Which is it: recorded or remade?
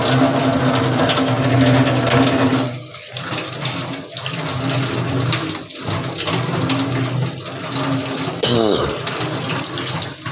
recorded